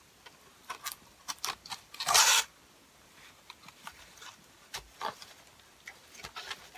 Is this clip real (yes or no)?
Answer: no